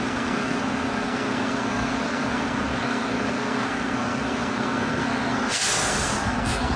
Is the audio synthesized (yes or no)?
yes